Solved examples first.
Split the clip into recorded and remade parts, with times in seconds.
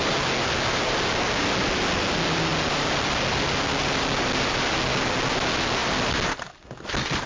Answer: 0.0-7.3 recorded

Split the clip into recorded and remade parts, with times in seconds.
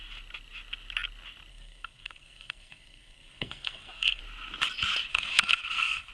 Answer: 0.0-1.5 recorded; 1.5-4.2 remade; 4.2-5.1 recorded; 5.1-6.1 remade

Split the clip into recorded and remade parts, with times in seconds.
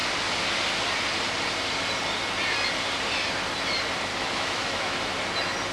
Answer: 0.0-4.1 recorded; 4.1-5.1 remade; 5.1-5.7 recorded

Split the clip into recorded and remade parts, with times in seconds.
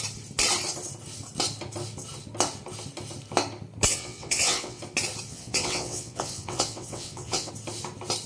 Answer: 0.0-3.9 recorded; 3.9-4.8 remade; 4.8-5.3 recorded; 5.3-7.5 remade; 7.5-8.3 recorded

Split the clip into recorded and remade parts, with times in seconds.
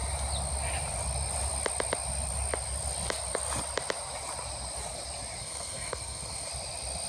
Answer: 0.0-5.4 recorded; 5.4-6.5 remade; 6.5-7.1 recorded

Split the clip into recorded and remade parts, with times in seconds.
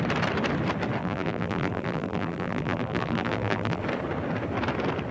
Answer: 0.0-1.0 recorded; 1.0-3.8 remade; 3.8-5.1 recorded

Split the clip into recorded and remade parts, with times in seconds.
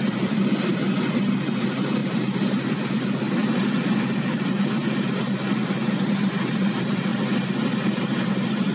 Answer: 0.0-0.7 remade; 0.7-1.3 recorded; 1.3-2.0 remade; 2.0-3.3 recorded; 3.3-4.8 remade; 4.8-6.4 recorded; 6.4-7.1 remade; 7.1-8.0 recorded; 8.0-8.7 remade